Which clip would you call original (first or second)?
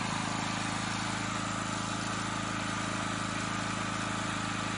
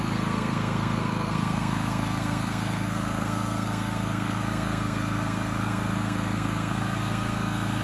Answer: first